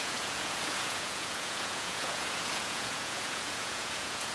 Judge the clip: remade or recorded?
remade